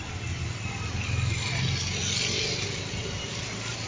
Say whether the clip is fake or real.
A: real